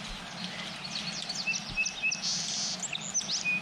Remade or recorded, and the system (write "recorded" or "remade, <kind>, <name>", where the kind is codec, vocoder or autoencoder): recorded